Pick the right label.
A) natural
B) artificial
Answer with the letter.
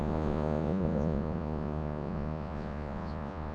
B